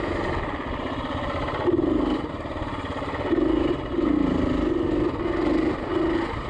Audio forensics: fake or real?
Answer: real